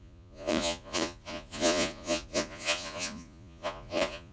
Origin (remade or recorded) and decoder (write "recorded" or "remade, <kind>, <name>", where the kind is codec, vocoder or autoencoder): remade, vocoder, Vocos